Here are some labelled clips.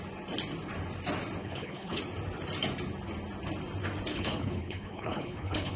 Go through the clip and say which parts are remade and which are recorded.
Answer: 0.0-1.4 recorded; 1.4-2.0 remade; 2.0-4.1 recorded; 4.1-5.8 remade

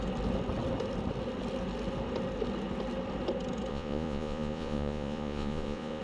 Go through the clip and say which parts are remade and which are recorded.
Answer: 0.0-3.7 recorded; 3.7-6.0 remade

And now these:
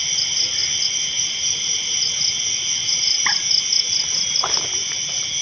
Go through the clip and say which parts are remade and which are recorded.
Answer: 0.0-5.4 recorded

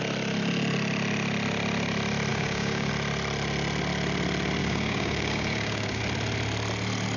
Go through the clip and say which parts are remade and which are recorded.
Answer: 0.0-2.3 recorded; 2.3-2.9 remade; 2.9-4.6 recorded; 4.6-6.0 remade; 6.0-7.2 recorded

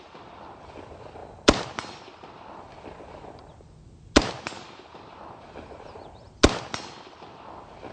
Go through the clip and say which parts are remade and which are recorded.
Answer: 0.0-7.9 recorded

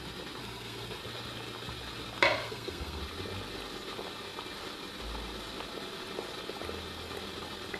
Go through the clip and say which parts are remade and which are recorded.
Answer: 0.0-0.4 recorded; 0.4-1.0 remade; 1.0-2.4 recorded; 2.4-3.0 remade; 3.0-7.8 recorded

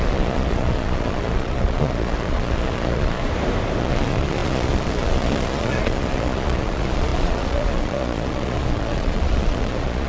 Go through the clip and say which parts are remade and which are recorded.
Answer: 0.0-3.2 remade; 3.2-3.8 recorded; 3.8-10.1 remade